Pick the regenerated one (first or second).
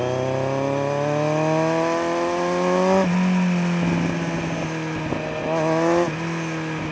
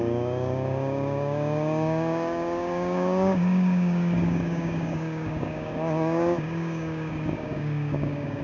second